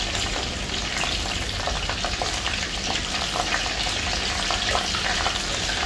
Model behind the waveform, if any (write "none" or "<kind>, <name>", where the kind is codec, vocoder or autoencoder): none